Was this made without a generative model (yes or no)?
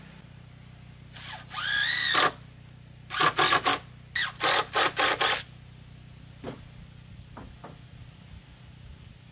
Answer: yes